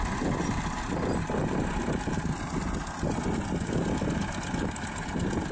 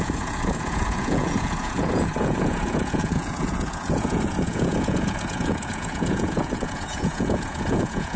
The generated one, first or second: second